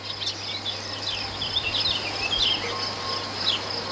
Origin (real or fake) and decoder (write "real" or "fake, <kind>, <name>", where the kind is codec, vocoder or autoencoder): real